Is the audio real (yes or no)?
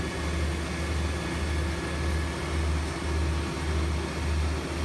yes